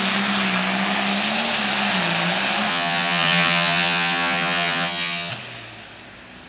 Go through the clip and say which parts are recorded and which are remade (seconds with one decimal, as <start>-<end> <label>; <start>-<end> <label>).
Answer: 0.0-2.7 recorded; 2.7-5.3 remade; 5.3-6.5 recorded